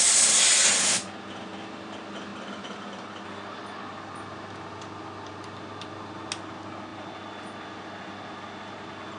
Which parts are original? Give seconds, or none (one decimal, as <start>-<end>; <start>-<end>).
0.0-9.2